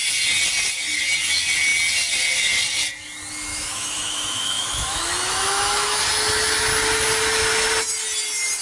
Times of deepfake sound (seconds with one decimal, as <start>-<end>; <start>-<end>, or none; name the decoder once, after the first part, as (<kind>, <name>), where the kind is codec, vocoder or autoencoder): 3.5-6.0 (autoencoder, DAC-VAE)